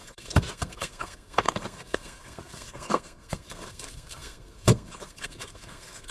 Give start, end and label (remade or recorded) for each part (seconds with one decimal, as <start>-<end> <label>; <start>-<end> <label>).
0.0-6.1 remade